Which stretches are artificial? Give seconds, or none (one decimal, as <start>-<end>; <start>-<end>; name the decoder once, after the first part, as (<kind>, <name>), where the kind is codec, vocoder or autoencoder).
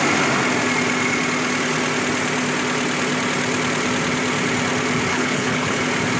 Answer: 5.1-5.8 (codec, HILCodec)